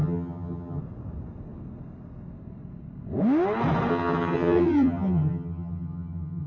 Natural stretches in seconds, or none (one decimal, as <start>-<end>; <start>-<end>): 0.8-3.9